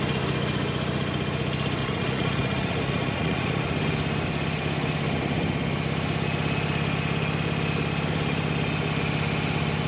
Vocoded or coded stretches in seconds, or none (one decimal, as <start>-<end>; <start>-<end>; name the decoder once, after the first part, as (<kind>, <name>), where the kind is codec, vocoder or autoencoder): 1.8-3.6 (vocoder, Vocos)